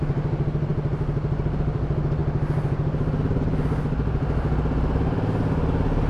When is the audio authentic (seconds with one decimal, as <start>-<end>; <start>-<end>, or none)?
0.0-6.1